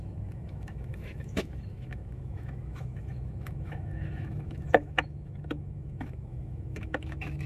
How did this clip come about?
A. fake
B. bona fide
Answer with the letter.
A